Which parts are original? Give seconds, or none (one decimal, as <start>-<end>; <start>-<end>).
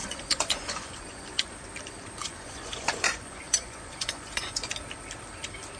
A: 1.6-2.2; 4.7-5.8